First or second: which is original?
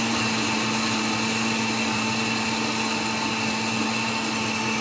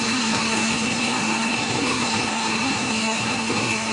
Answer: first